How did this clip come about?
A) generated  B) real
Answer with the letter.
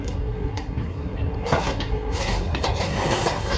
A